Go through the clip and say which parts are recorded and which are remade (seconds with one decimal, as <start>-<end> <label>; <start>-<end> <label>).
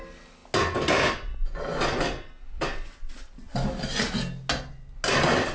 0.0-5.5 recorded